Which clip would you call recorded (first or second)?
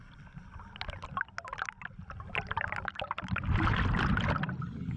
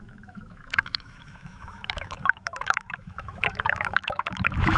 first